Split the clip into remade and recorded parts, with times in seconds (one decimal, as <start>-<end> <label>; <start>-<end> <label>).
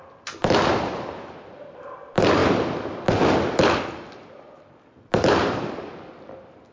0.0-0.4 recorded; 0.4-2.0 remade; 2.0-6.7 recorded